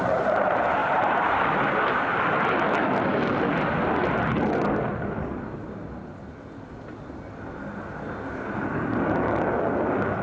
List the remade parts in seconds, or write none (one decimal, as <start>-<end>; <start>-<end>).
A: 0.8-1.5